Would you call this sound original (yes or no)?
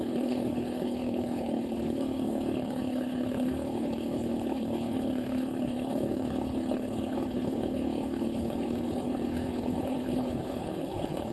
no